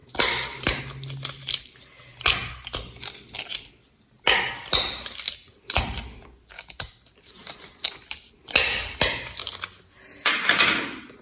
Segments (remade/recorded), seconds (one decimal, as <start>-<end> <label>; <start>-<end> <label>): 0.0-0.8 remade; 0.8-11.2 recorded